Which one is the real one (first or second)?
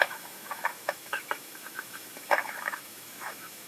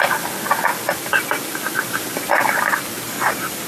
second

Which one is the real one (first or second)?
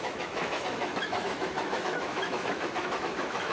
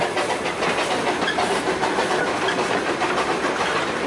second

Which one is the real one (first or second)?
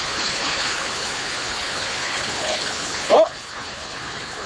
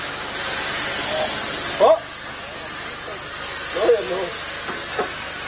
second